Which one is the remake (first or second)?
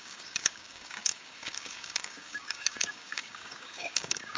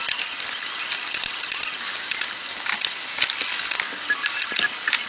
first